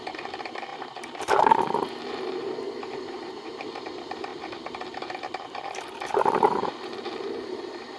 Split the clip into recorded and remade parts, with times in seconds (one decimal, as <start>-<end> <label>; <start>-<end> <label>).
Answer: 0.0-8.0 remade